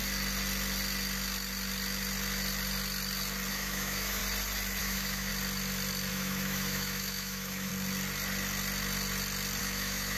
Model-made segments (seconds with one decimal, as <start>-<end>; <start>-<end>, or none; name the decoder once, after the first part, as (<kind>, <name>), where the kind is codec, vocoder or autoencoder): 3.5-4.2 (autoencoder, DAC-VAE); 4.8-5.3; 6.1-7.7; 9.6-10.2